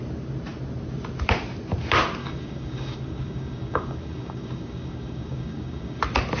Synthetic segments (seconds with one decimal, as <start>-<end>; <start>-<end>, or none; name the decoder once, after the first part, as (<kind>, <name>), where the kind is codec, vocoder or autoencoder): 2.2-6.0 (codec, DAC)